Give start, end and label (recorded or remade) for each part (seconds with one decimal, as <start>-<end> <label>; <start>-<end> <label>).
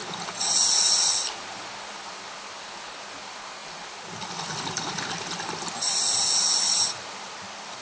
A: 0.0-7.8 recorded